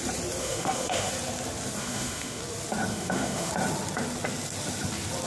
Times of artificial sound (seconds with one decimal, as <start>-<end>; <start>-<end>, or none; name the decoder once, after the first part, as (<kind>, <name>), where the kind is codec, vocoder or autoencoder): 0.4-1.1 (autoencoder, DAC-VAE); 1.8-2.4; 2.9-3.5